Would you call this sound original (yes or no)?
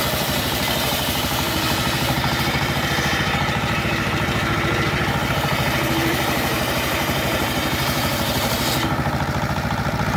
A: no